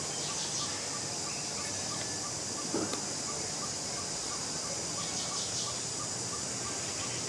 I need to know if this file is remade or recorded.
recorded